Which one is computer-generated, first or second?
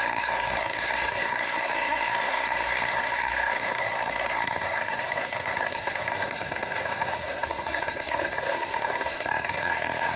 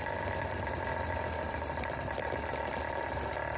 first